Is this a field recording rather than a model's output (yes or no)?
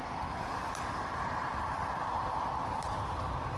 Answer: yes